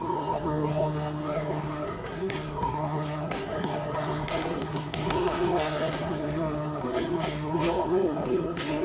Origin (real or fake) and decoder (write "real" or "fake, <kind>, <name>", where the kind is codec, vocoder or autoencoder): fake, codec, SNAC